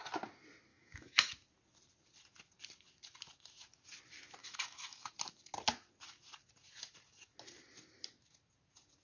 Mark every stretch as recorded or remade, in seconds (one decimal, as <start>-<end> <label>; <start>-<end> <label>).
0.0-0.7 recorded; 0.7-1.3 remade; 1.3-4.4 recorded; 4.4-5.1 remade; 5.1-9.0 recorded